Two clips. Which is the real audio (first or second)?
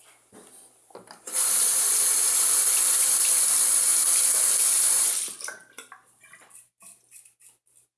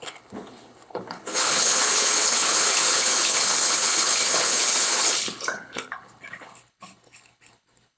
first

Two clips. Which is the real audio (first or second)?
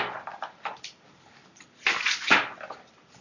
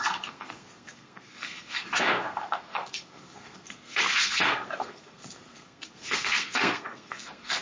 first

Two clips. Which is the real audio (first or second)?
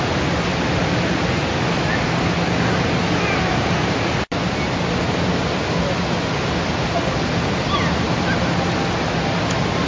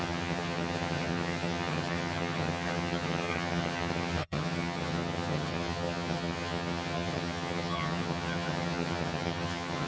first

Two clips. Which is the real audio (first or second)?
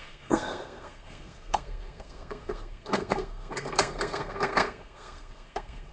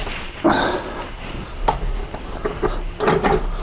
second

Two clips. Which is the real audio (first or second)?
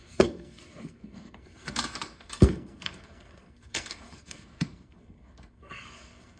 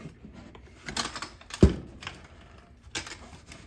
second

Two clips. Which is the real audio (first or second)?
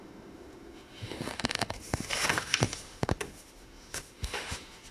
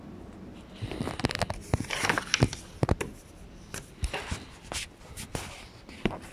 second